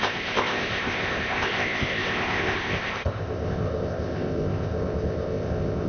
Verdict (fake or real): fake